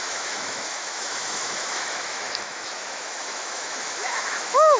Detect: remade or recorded remade